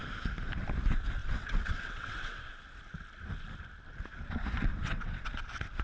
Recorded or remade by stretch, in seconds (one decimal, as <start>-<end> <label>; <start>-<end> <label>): 0.0-1.2 recorded; 1.2-2.6 remade; 2.6-4.7 recorded; 4.7-5.3 remade; 5.3-5.8 recorded